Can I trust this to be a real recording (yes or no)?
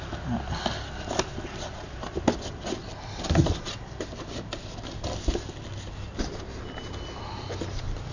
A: yes